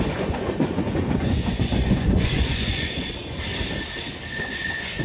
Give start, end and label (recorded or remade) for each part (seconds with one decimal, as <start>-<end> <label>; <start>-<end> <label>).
0.0-3.5 remade; 3.5-4.4 recorded; 4.4-5.0 remade